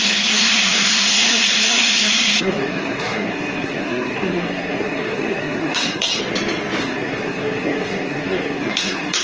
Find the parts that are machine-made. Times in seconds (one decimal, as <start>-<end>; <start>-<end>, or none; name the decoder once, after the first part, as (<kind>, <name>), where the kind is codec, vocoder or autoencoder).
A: 0.0-6.2 (codec, SNAC); 6.8-9.2